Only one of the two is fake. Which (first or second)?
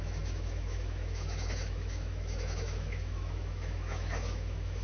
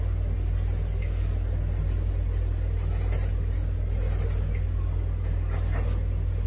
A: first